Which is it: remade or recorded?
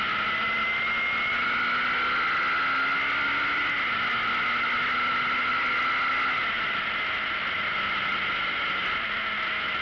recorded